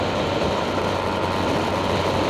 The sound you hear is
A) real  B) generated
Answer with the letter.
A